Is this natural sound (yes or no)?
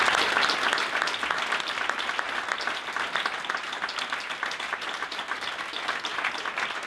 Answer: yes